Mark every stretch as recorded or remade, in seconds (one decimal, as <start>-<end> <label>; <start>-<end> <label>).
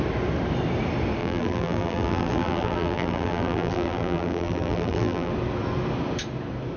0.0-1.2 recorded; 1.2-5.3 remade; 5.3-6.8 recorded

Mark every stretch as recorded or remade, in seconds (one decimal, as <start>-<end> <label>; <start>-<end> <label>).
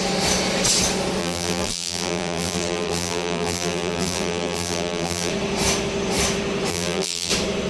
0.0-1.2 recorded; 1.2-5.3 remade; 5.3-6.7 recorded; 6.7-7.3 remade; 7.3-7.7 recorded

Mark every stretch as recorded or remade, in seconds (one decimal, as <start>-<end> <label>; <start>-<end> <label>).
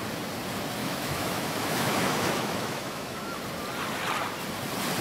0.0-0.8 recorded; 0.8-3.4 remade; 3.4-5.0 recorded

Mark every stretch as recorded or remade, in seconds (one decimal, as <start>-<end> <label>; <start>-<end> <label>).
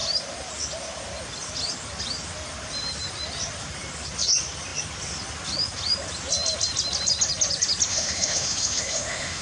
0.0-7.9 recorded; 7.9-9.4 remade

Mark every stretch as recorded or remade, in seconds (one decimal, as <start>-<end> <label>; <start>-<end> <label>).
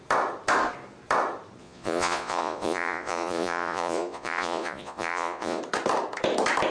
0.0-1.6 recorded; 1.6-5.6 remade; 5.6-6.7 recorded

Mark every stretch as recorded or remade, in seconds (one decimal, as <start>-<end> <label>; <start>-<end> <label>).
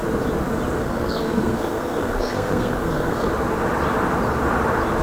0.0-0.8 recorded; 0.8-3.3 remade; 3.3-5.0 recorded